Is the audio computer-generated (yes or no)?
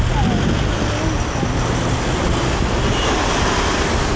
no